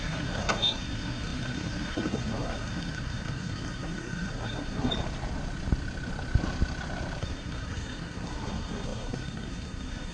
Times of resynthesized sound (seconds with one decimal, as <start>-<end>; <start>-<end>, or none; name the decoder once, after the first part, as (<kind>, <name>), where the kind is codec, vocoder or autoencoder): 0.0-4.9 (codec, SNAC); 7.2-10.1